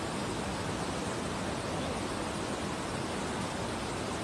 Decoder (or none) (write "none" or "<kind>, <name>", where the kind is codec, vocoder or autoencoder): none